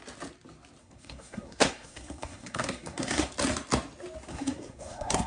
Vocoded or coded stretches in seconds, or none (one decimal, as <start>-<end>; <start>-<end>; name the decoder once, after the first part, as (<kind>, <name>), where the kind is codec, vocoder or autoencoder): 0.8-3.3 (codec, SNAC); 4.3-5.3